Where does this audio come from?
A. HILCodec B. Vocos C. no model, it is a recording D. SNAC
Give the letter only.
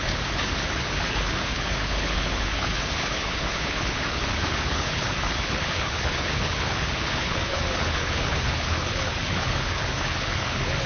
A